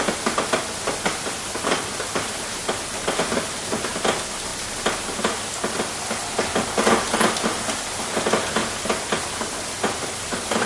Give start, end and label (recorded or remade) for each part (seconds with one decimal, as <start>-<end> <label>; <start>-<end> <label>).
0.0-10.7 recorded